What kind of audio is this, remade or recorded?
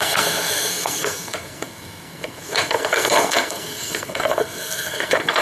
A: remade